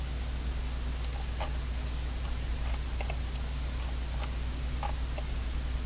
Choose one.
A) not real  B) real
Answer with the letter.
B